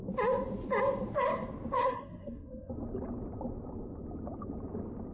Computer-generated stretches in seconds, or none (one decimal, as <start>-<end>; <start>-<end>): 1.8-2.7